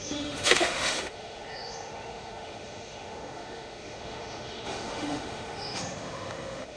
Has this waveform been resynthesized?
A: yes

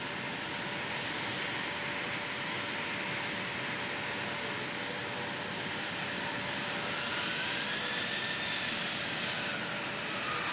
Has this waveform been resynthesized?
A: no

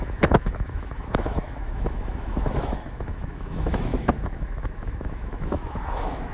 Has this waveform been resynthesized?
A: yes